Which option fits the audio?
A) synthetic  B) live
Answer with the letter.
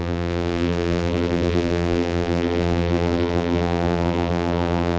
A